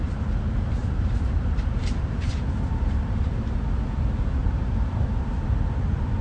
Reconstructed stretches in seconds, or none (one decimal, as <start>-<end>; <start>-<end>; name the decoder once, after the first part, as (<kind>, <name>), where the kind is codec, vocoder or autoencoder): 0.8-2.3 (vocoder, BigVGAN v2); 4.4-5.4